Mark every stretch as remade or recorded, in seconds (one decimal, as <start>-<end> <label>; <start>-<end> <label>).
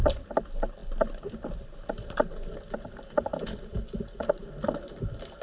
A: 0.0-5.4 recorded